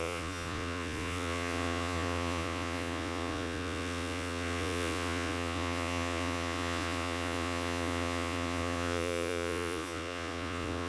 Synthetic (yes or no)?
yes